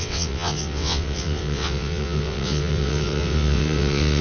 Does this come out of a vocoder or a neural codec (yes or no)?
yes